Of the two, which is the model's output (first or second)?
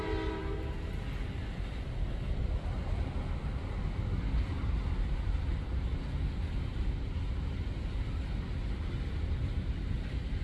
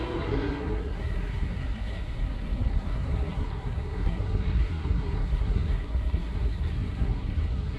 second